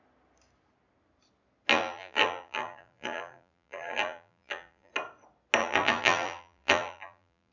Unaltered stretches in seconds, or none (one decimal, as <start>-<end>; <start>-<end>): 0.0-1.7; 4.9-5.6